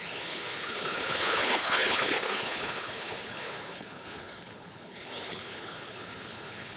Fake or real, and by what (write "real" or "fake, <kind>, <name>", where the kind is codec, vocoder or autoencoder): fake, codec, HILCodec